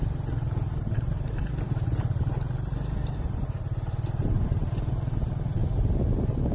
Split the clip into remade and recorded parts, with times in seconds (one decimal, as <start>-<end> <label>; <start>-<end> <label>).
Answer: 0.0-2.7 remade; 2.7-4.1 recorded; 4.1-5.6 remade; 5.6-6.5 recorded